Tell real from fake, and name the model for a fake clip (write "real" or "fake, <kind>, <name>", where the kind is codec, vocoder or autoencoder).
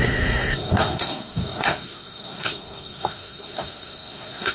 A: fake, codec, SNAC